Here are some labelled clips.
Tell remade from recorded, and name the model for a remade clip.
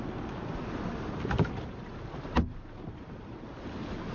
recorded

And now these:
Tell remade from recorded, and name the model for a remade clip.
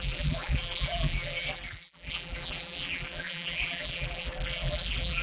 remade, vocoder, BigVGAN v2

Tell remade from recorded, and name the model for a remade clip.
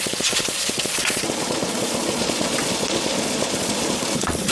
remade, vocoder, Vocos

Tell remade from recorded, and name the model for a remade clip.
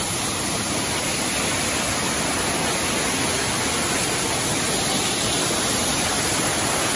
recorded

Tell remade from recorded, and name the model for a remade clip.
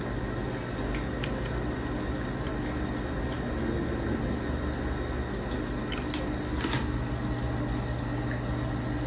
recorded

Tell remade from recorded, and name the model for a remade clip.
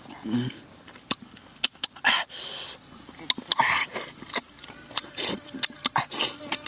recorded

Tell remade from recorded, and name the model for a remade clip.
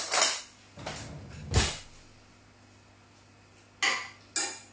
recorded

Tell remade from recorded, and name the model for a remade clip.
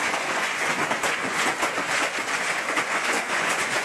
remade, vocoder, Vocos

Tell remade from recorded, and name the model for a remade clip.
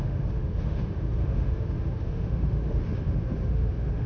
remade, autoencoder, DAC-VAE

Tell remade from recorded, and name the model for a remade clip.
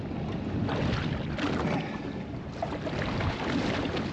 recorded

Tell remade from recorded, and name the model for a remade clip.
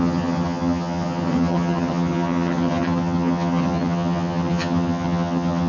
remade, vocoder, HiFi-GAN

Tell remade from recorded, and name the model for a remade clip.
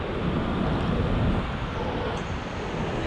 recorded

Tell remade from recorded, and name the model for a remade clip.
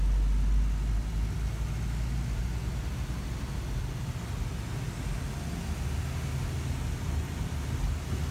recorded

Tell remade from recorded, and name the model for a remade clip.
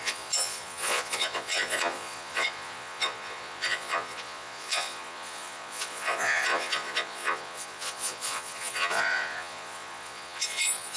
remade, vocoder, Vocos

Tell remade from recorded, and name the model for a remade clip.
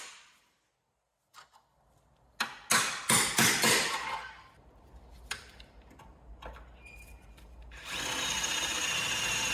recorded